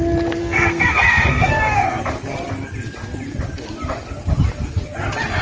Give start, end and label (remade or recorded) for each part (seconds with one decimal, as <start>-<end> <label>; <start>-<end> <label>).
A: 0.0-0.4 recorded; 0.4-1.8 remade; 1.8-5.4 recorded